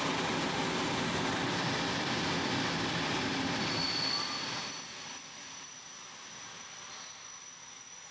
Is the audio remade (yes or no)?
no